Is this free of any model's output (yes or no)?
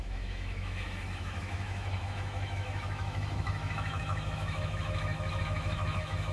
no